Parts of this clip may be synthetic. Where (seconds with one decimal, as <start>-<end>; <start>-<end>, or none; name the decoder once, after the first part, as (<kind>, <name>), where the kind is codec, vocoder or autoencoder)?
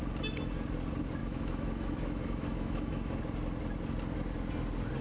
1.2-3.2 (autoencoder, DAC-VAE)